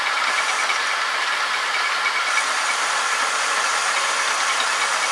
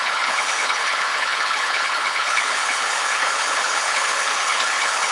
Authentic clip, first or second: first